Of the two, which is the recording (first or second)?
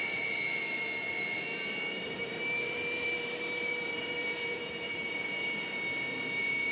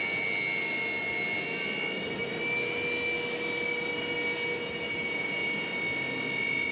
second